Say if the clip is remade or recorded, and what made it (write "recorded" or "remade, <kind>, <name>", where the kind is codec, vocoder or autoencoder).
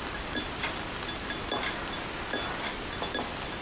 recorded